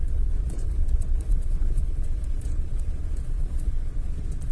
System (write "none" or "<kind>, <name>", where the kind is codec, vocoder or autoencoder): vocoder, Vocos